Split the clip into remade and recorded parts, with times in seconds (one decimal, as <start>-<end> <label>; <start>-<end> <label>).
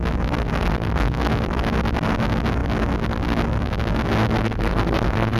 0.0-0.6 recorded; 0.6-1.3 remade; 1.3-4.4 recorded; 4.4-5.4 remade